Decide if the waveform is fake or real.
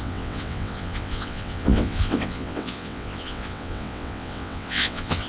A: fake